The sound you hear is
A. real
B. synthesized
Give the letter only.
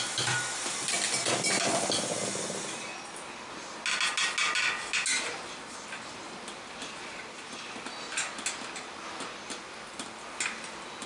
A